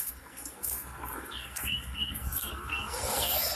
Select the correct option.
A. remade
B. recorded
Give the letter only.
A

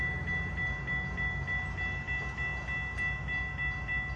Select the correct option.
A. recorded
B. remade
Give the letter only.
A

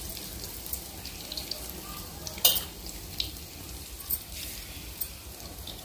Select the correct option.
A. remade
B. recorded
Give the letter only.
A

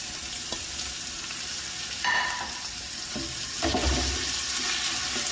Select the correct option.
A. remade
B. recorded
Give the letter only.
B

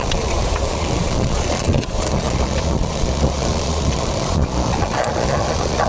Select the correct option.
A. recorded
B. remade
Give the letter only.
B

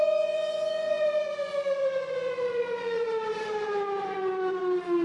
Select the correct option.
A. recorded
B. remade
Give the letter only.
B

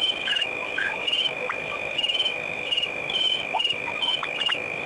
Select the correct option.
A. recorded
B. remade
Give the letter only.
B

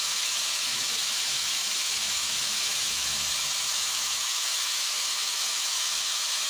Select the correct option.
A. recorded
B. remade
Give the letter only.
B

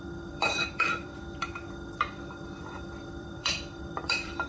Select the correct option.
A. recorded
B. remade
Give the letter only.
B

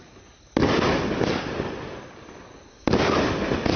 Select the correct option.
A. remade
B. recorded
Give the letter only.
B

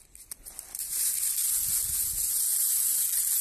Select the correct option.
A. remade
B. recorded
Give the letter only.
B